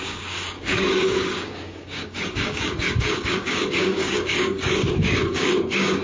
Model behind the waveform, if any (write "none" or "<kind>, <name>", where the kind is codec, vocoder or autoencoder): codec, DAC